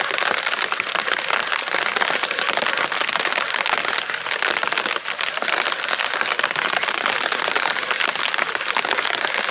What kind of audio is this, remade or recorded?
recorded